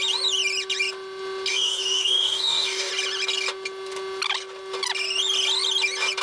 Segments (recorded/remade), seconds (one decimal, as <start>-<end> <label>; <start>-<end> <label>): 0.0-1.5 recorded; 1.5-2.9 remade; 2.9-6.2 recorded

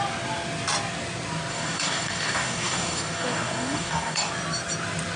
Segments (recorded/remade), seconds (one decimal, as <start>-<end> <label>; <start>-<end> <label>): 0.0-1.5 recorded; 1.5-4.3 remade; 4.3-5.2 recorded

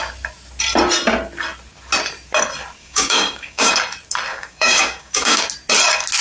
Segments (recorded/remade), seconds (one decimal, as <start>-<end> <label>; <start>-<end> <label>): 0.0-2.8 recorded; 2.8-3.7 remade; 3.7-4.3 recorded; 4.3-5.4 remade; 5.4-6.2 recorded

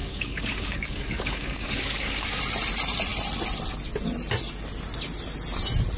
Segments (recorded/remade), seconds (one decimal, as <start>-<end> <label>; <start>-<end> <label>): 0.0-2.4 remade; 2.4-6.0 recorded

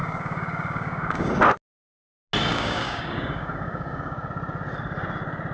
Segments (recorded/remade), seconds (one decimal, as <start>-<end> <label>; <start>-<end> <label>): 0.0-1.3 remade; 1.3-2.5 recorded; 2.5-4.3 remade; 4.3-5.5 recorded

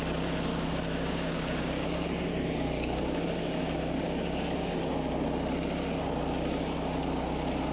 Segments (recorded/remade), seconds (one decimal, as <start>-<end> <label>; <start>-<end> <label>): 0.0-0.5 recorded; 0.5-4.9 remade; 4.9-7.7 recorded

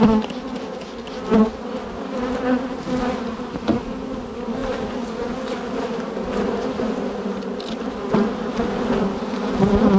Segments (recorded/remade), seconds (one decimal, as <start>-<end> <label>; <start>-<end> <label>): 0.0-10.0 recorded

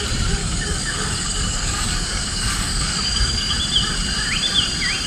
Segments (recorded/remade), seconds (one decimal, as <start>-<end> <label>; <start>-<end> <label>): 0.0-0.4 recorded; 0.4-3.5 remade; 3.5-5.1 recorded